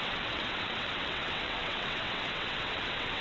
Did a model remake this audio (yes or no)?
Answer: yes